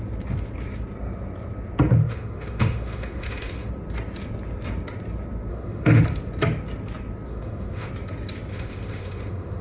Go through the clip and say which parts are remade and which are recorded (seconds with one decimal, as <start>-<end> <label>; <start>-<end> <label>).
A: 0.0-2.0 recorded; 2.0-3.7 remade; 3.7-5.5 recorded; 5.5-6.0 remade; 6.0-7.3 recorded; 7.3-7.9 remade; 7.9-8.5 recorded; 8.5-9.6 remade